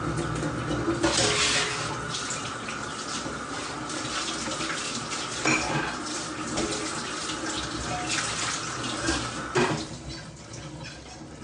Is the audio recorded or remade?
recorded